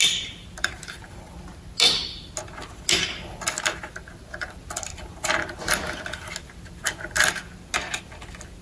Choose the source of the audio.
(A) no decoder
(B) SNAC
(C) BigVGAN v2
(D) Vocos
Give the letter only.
A